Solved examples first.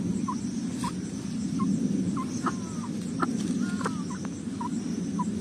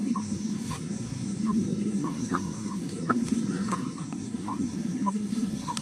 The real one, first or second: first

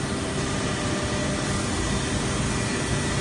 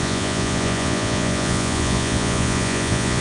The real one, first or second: first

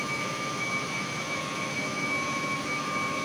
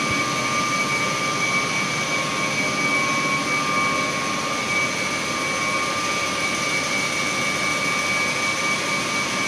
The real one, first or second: second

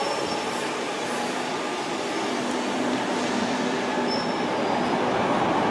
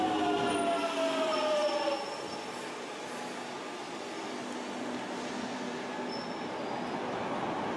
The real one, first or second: second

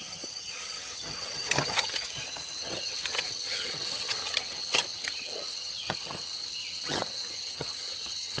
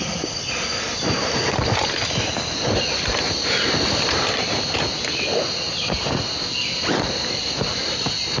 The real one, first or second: second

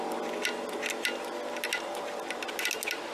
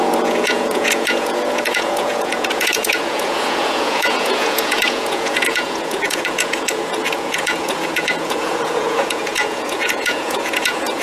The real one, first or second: first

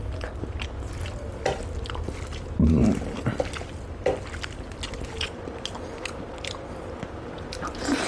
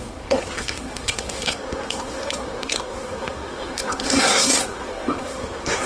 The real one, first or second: first